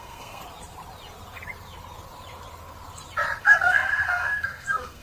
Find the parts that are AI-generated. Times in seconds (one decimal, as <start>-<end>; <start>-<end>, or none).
0.0-0.4; 3.4-5.0